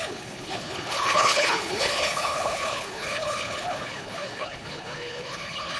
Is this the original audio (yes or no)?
no